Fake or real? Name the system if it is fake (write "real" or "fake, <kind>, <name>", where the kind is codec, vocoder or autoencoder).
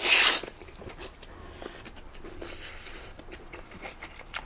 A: real